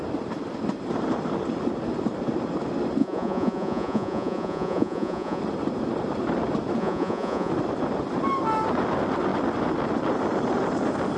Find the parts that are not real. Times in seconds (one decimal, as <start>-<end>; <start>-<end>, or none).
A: 3.0-5.4; 6.8-7.5